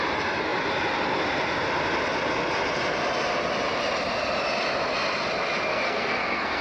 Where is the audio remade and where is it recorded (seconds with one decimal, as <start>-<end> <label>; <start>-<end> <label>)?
0.0-5.7 recorded; 5.7-6.6 remade

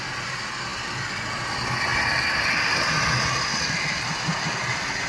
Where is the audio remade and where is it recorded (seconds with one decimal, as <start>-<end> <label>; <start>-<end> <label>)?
0.0-5.1 recorded

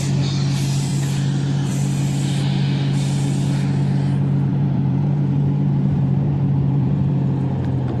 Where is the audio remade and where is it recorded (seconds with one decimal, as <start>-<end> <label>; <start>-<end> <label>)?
0.0-4.5 recorded; 4.5-7.1 remade; 7.1-8.0 recorded